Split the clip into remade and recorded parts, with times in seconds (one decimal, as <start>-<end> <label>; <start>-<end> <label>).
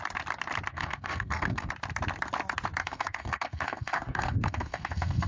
0.0-0.7 recorded; 0.7-1.7 remade; 1.7-2.8 recorded; 2.8-5.3 remade